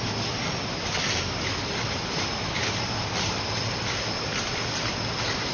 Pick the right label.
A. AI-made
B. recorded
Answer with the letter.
B